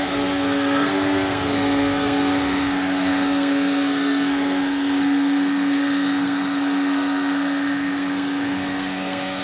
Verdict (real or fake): fake